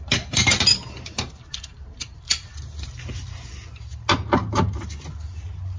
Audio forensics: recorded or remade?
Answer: recorded